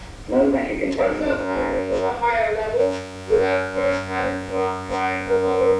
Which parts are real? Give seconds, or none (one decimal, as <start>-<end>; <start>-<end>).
0.0-1.4; 2.1-2.8